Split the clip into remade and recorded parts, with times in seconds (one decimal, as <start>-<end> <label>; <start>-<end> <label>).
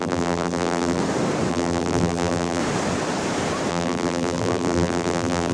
0.0-1.0 remade; 1.0-1.5 recorded; 1.5-2.6 remade; 2.6-3.7 recorded; 3.7-5.5 remade